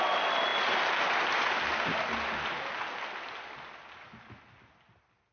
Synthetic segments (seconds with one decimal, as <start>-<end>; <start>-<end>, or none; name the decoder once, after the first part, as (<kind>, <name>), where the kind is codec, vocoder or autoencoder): none